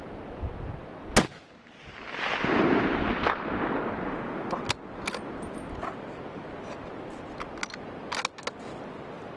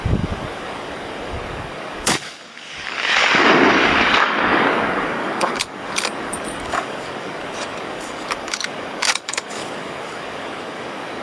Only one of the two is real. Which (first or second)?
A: first